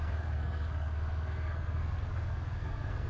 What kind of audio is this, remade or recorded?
remade